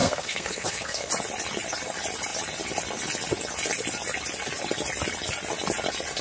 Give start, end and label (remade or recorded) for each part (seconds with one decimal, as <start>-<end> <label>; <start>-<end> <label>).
0.0-1.1 remade; 1.1-6.2 recorded